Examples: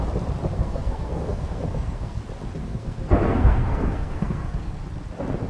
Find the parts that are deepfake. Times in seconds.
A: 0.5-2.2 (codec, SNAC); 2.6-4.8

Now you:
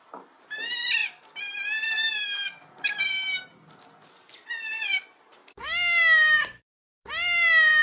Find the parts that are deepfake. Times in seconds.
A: 5.4-7.1 (codec, DAC)

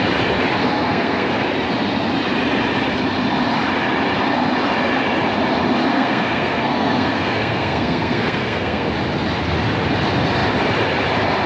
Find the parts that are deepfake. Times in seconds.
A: 0.6-1.3 (codec, SNAC); 5.9-8.9

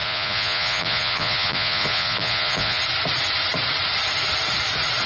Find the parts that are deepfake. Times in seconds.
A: 0.0-2.8 (vocoder, Vocos)

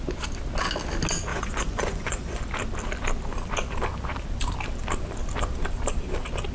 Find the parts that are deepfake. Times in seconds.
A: 1.3-2.4 (vocoder, Vocos)

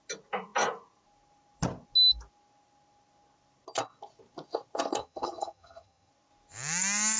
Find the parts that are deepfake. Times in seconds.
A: 5.0-6.1 (vocoder, HiFi-GAN)

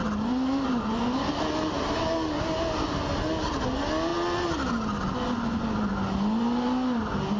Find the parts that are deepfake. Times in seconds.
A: none